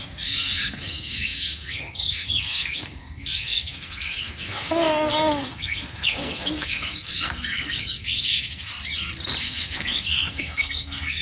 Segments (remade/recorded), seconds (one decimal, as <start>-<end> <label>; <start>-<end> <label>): 0.0-8.7 remade; 8.7-9.4 recorded; 9.4-11.2 remade